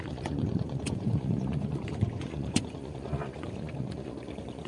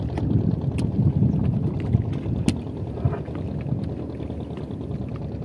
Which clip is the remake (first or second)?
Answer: first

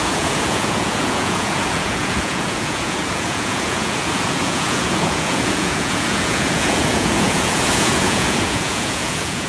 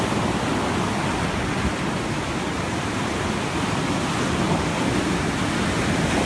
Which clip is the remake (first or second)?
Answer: first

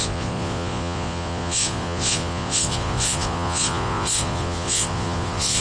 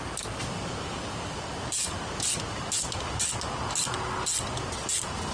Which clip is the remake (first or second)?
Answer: first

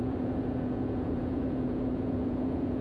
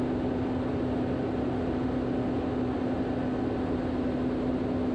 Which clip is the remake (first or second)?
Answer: first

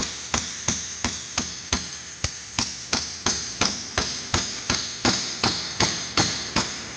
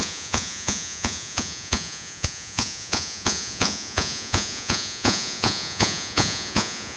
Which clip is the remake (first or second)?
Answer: second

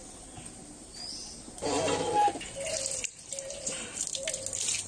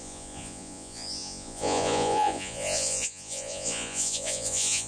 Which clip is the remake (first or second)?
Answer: second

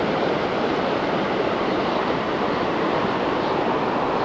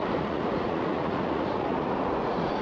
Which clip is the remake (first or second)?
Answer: second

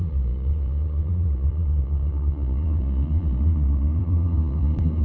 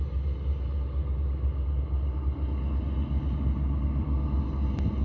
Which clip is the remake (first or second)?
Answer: first